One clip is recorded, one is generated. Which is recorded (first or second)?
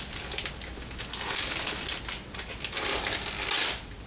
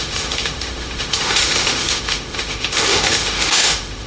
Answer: first